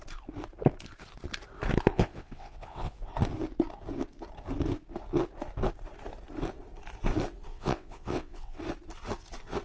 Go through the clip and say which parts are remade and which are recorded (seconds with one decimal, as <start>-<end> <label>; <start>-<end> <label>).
0.0-1.9 recorded; 1.9-3.1 remade; 3.1-7.5 recorded; 7.5-8.6 remade; 8.6-9.6 recorded